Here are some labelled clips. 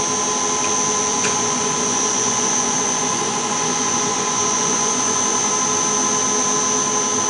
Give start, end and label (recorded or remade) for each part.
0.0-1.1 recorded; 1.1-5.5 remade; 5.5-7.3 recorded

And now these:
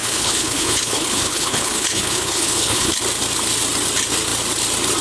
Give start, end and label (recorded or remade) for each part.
0.0-3.0 remade; 3.0-5.0 recorded